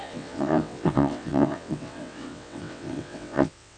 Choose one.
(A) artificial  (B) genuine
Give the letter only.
A